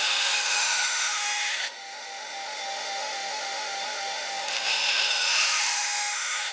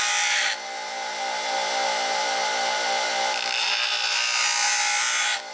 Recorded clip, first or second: second